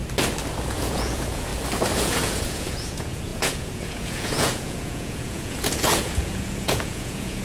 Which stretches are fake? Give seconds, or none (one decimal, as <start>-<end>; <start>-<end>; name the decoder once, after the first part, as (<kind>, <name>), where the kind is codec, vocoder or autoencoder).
0.7-1.5 (vocoder, Vocos); 2.0-7.4